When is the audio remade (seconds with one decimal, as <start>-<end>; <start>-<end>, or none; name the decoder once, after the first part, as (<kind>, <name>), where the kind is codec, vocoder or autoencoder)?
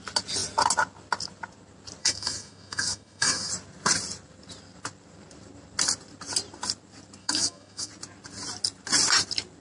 2.0-3.5 (autoencoder, DAC-VAE); 7.2-7.9